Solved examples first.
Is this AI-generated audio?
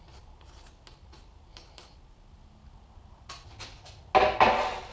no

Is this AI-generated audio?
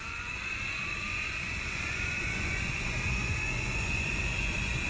yes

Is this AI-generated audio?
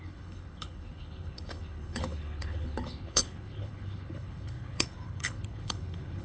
yes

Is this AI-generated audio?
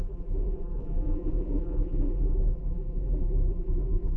yes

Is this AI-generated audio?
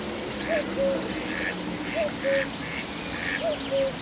no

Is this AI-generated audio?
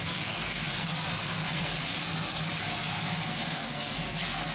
yes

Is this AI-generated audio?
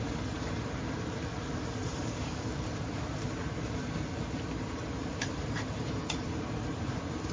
yes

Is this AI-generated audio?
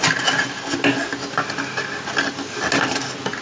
no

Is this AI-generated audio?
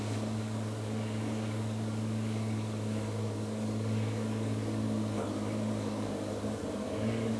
yes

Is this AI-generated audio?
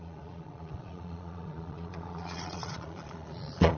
yes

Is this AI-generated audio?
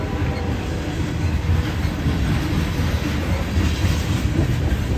no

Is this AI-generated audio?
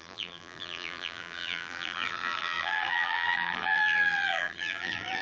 yes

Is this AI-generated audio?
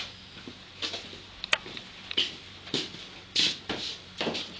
no